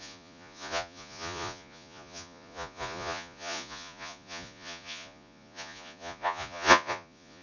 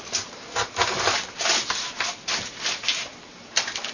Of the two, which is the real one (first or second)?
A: second